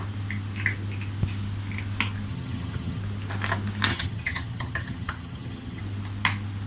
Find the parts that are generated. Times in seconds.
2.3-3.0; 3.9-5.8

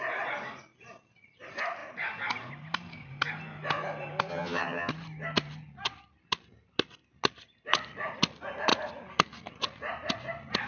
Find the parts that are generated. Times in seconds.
4.3-4.9

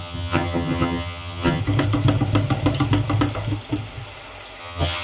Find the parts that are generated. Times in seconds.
0.0-1.6; 4.6-5.0

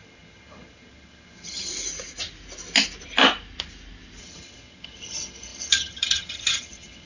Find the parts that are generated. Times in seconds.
0.0-1.7; 4.2-7.1

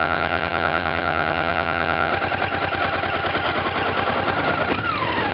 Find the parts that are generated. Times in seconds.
0.0-2.1

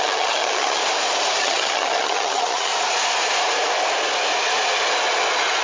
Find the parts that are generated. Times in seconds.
0.0-0.8; 1.4-2.7